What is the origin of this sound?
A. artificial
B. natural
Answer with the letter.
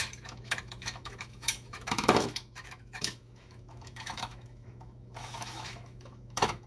A